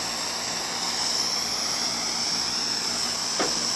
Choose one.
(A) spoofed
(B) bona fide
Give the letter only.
B